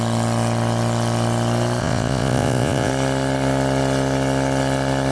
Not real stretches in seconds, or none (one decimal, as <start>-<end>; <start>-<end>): 1.8-2.9